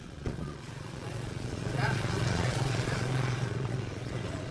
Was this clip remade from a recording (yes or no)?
yes